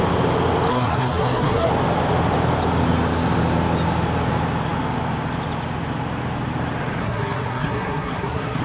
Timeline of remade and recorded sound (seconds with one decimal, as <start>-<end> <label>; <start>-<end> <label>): 0.0-0.7 recorded; 0.7-1.7 remade; 1.7-7.0 recorded; 7.0-8.6 remade